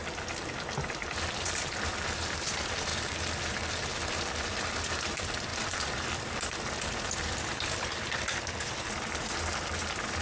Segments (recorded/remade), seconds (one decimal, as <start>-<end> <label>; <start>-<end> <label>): 0.0-2.9 recorded; 2.9-3.4 remade; 3.4-10.2 recorded